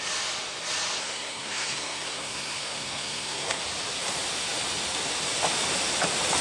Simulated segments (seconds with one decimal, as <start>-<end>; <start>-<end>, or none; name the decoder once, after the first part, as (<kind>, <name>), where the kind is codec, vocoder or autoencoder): 1.0-3.6 (codec, SNAC)